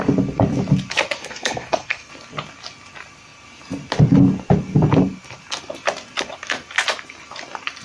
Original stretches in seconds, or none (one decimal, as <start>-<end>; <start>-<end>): 0.0-1.2; 2.1-7.8